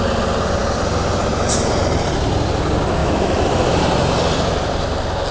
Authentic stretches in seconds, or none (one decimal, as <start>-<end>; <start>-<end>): 0.0-3.0; 3.8-5.3